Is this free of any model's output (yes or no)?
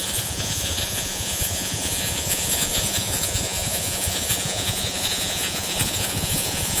no